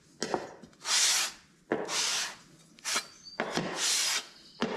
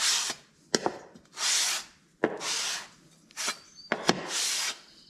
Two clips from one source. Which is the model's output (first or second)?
second